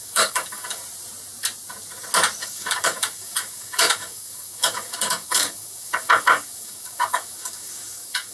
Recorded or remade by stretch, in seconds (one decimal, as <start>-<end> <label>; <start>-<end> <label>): 0.0-0.8 remade; 0.8-2.4 recorded; 2.4-8.3 remade